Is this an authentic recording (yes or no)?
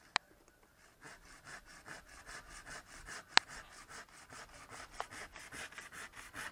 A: yes